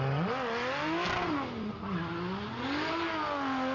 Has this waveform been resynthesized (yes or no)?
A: no